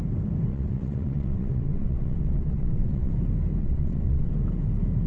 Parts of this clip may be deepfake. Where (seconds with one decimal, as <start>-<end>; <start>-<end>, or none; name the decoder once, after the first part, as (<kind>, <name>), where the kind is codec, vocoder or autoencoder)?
0.5-3.1 (vocoder, WaveNeXt); 3.6-4.3